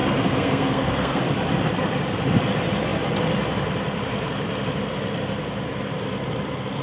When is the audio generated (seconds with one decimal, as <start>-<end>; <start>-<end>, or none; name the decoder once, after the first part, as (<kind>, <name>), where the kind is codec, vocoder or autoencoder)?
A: 0.0-1.2 (codec, SNAC)